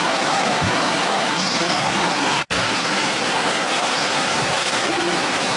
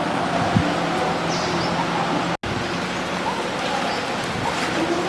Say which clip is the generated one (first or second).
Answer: first